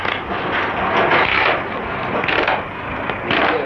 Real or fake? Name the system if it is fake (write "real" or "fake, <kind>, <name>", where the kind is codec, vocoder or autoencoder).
real